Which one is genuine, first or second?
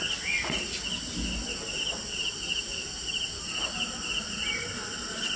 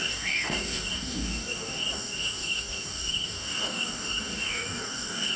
first